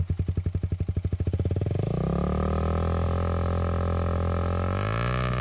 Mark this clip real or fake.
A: real